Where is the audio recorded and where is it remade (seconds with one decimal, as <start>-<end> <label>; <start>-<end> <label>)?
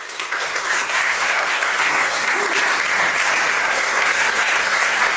0.0-2.3 remade; 2.3-3.5 recorded; 3.5-5.2 remade